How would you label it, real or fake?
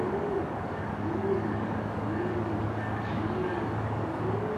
fake